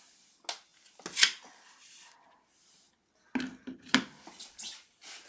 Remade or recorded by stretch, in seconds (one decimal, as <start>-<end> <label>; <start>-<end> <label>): 0.0-5.3 recorded